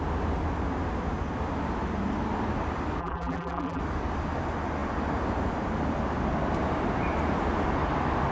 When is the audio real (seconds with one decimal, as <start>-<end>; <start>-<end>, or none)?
0.0-3.0; 3.8-8.3